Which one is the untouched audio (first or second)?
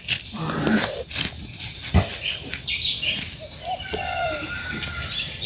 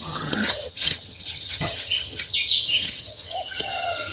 first